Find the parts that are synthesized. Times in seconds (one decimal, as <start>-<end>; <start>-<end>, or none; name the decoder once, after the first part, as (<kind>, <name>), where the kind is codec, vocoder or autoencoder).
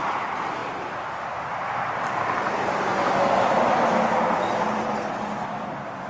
none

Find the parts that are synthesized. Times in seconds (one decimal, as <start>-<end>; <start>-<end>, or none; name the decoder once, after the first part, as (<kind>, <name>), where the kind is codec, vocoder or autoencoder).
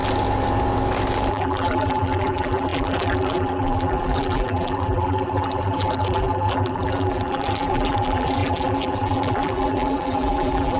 1.3-10.8 (vocoder, BigVGAN v2)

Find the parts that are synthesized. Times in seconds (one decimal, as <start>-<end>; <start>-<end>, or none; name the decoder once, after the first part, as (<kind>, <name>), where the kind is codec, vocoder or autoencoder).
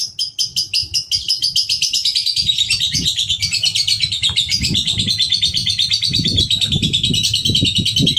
0.8-5.0 (vocoder, BigVGAN v2)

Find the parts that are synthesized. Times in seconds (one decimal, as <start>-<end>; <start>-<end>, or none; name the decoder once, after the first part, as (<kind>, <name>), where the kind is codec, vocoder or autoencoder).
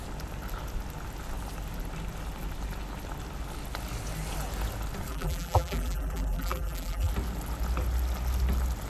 5.1-7.1 (vocoder, BigVGAN v2)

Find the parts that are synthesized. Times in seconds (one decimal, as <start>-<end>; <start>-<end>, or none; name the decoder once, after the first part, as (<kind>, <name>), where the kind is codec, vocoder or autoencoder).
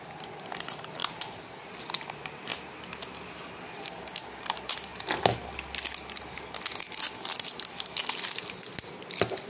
0.0-2.5 (vocoder, BigVGAN v2); 4.4-4.9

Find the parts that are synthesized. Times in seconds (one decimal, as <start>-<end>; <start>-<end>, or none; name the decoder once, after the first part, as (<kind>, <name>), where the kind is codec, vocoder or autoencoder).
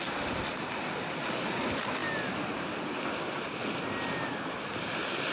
none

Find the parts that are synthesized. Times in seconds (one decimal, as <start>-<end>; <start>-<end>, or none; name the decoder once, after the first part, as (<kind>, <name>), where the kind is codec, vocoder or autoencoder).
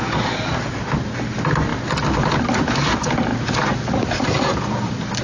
1.7-2.6 (vocoder, BigVGAN v2); 3.3-5.2